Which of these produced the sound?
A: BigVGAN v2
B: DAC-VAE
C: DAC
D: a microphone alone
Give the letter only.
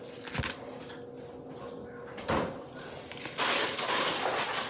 D